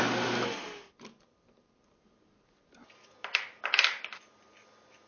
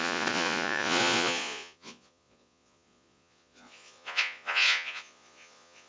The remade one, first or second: second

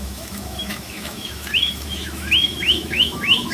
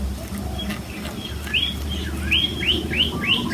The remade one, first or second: first